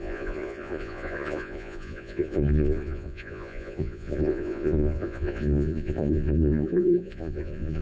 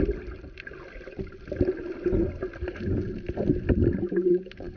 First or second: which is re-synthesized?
first